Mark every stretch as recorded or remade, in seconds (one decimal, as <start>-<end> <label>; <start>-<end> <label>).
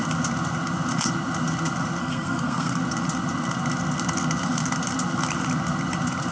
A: 0.0-2.0 recorded; 2.0-2.8 remade; 2.8-6.3 recorded